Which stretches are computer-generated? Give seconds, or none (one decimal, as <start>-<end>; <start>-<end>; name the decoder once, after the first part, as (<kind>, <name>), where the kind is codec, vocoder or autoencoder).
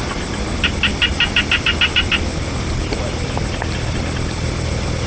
none